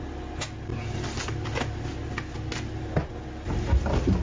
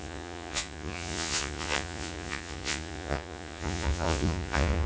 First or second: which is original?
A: first